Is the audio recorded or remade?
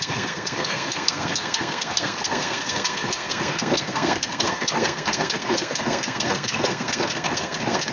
remade